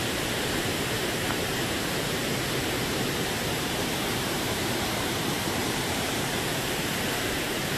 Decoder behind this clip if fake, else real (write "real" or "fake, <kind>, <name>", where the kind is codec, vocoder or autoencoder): fake, vocoder, BigVGAN v2